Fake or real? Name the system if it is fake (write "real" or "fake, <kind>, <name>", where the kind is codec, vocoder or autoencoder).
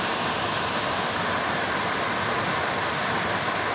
real